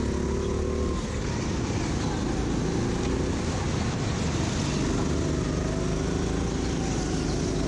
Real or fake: real